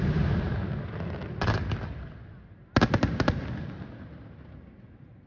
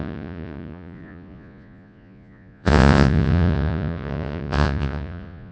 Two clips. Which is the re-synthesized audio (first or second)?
second